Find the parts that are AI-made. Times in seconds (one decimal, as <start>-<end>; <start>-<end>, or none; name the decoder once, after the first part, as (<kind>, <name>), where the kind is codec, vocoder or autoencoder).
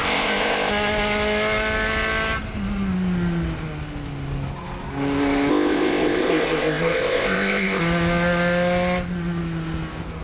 0.0-0.7 (codec, ZipCodec); 5.5-7.8